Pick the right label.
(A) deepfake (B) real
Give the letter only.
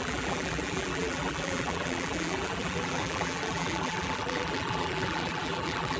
A